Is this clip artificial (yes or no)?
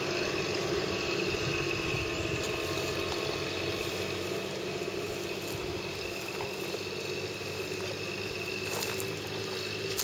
no